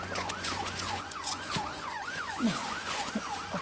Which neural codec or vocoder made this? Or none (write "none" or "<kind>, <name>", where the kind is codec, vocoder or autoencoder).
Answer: vocoder, Vocos